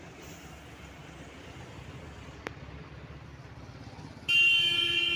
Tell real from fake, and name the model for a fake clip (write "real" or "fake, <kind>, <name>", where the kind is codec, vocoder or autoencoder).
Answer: real